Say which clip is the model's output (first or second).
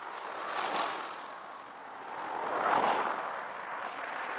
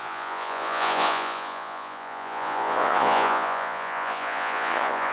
second